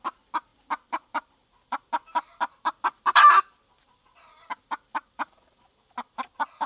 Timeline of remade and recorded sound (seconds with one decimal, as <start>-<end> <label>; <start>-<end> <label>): 0.0-6.7 remade